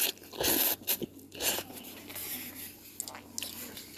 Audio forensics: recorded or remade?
recorded